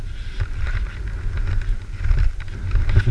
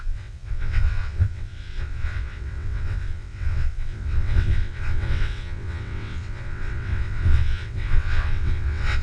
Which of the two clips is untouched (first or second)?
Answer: first